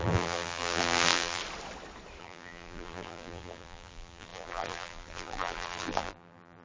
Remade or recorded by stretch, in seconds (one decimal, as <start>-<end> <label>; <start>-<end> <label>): 0.0-1.4 remade; 1.4-2.2 recorded; 2.2-6.6 remade